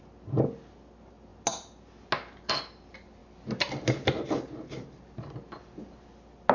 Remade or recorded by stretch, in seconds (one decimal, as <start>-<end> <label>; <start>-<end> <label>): 0.0-6.5 recorded